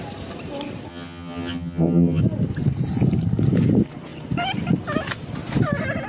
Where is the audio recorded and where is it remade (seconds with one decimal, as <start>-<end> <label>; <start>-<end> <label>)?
0.0-0.9 recorded; 0.9-2.2 remade; 2.2-6.1 recorded